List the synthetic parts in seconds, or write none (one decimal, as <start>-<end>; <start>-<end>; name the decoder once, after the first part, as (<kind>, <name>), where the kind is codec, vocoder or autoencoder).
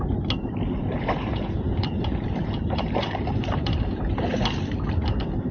0.8-4.1 (vocoder, BigVGAN v2)